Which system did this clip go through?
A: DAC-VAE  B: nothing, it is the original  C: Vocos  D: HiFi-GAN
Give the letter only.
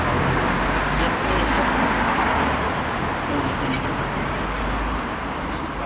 B